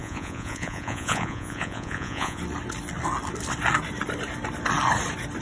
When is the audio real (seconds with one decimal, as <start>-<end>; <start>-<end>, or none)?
2.4-5.4